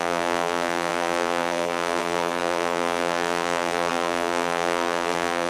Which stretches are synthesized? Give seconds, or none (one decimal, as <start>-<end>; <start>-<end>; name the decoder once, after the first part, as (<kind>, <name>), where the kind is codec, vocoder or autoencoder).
0.0-5.5 (vocoder, BigVGAN v2)